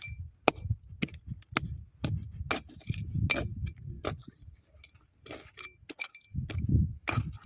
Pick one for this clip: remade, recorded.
recorded